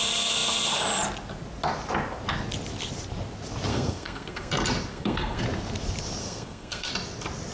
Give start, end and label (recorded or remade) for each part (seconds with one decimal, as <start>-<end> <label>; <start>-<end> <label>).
0.0-3.7 recorded; 3.7-4.5 remade; 4.5-4.9 recorded; 4.9-5.4 remade; 5.4-6.2 recorded; 6.2-6.9 remade; 6.9-7.5 recorded